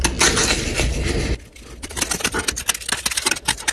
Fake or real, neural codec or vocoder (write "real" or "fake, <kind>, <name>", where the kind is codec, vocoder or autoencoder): real